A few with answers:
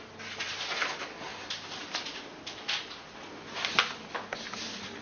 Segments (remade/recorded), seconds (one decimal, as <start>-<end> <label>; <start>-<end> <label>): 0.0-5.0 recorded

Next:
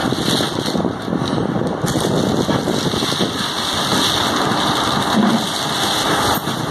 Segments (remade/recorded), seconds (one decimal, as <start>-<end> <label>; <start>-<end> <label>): 0.0-6.7 recorded

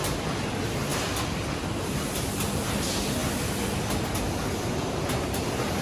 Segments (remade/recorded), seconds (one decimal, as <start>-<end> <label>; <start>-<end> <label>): 0.0-5.8 recorded

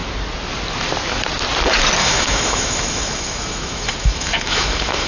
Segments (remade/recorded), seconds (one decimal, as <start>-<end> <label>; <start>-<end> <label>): 0.0-2.0 recorded; 2.0-5.1 remade

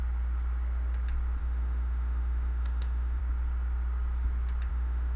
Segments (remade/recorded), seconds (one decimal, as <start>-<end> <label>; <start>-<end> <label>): 0.0-1.4 recorded; 1.4-3.2 remade; 3.2-4.7 recorded; 4.7-5.2 remade